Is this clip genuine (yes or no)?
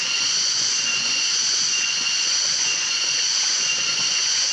no